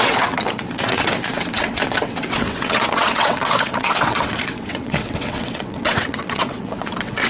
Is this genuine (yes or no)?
no